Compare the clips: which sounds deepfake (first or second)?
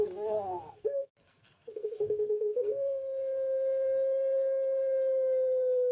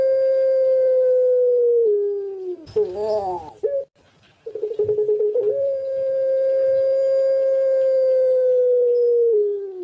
first